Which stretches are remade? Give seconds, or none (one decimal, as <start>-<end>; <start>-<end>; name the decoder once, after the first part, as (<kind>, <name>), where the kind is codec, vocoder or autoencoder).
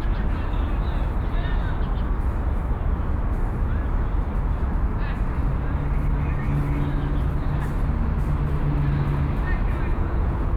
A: 9.9-10.6 (vocoder, Vocos)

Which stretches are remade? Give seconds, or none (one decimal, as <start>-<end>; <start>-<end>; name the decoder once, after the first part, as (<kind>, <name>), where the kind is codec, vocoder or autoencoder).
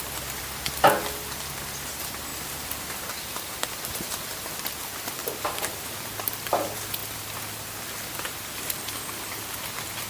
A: 2.3-3.1 (vocoder, BigVGAN v2); 5.2-5.8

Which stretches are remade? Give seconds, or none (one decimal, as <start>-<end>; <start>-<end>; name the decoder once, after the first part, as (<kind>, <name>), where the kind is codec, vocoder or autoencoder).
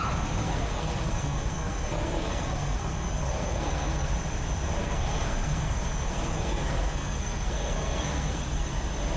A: 0.4-4.1 (codec, SNAC); 4.8-8.7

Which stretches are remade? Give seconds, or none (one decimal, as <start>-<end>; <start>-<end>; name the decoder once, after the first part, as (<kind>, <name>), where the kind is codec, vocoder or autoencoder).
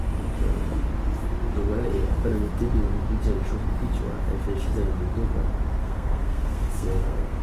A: 5.8-7.4 (codec, SNAC)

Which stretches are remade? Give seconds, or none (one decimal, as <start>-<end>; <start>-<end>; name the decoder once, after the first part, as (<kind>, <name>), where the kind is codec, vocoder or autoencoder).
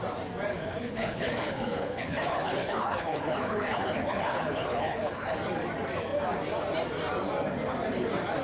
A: 0.5-5.4 (codec, HILCodec)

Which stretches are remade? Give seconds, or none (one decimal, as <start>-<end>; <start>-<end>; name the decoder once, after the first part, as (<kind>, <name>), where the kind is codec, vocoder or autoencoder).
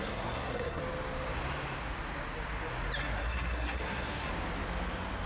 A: 0.0-0.8 (codec, SNAC); 3.0-4.3